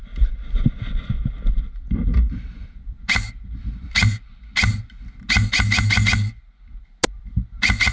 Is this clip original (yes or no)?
yes